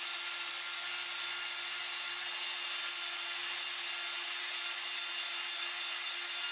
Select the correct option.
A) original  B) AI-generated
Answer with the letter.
A